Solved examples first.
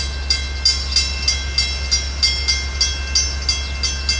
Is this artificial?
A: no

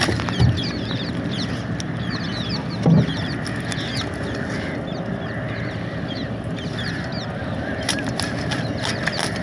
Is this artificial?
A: no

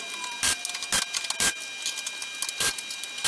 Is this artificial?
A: no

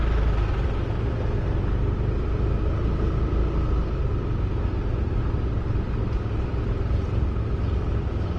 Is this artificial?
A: no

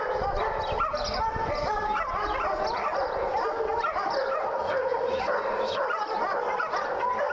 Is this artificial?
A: no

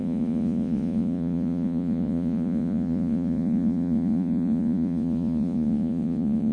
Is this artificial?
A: yes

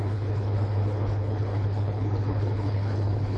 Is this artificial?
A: yes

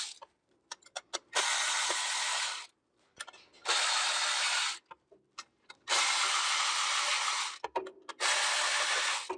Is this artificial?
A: no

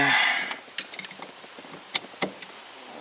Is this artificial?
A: no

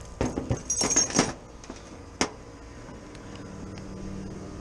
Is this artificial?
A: no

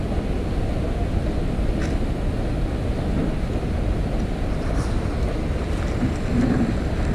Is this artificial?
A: no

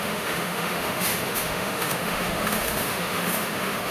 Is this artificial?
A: yes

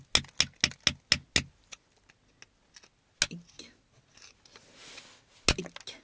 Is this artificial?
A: no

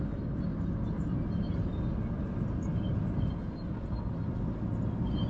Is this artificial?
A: no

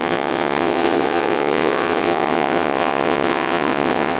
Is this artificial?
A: yes